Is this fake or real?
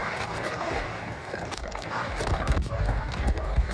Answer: fake